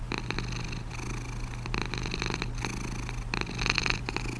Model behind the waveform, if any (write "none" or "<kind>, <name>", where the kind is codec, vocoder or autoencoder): none